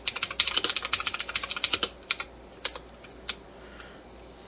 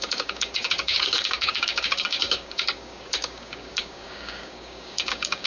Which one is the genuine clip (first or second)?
first